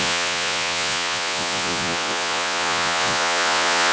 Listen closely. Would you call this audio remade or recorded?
remade